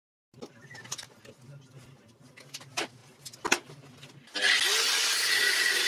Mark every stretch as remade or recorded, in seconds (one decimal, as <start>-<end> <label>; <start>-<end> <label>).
0.0-5.9 recorded